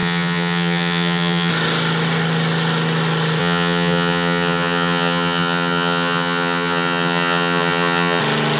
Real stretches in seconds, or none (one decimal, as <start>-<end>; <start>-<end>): 1.5-3.4; 8.2-8.6